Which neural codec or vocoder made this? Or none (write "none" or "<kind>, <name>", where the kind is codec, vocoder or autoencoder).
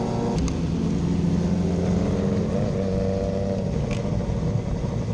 none